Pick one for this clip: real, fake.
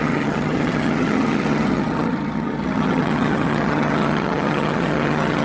fake